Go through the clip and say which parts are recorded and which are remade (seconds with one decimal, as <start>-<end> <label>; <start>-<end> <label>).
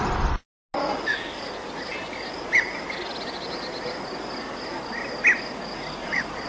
0.0-6.0 recorded; 6.0-6.5 remade